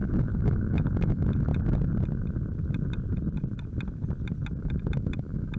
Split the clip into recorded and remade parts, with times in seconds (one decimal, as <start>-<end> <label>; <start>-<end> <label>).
0.0-1.5 remade; 1.5-4.6 recorded; 4.6-5.6 remade